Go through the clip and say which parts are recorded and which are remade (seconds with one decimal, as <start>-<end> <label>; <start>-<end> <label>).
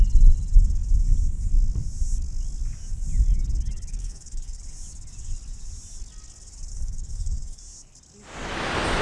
0.0-3.9 recorded; 3.9-4.6 remade; 4.6-6.7 recorded; 6.7-7.6 remade; 7.6-9.0 recorded